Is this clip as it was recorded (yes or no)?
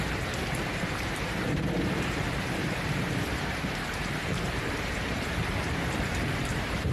no